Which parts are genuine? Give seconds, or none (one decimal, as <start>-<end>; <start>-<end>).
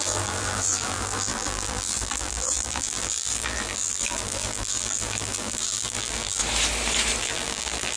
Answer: 6.4-7.2